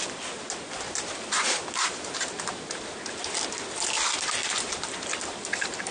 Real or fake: real